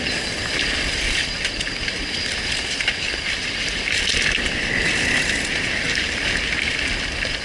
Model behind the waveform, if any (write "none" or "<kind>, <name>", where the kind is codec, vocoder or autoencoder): none